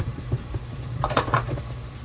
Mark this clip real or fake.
fake